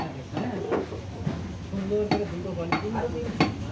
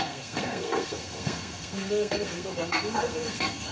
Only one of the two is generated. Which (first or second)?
second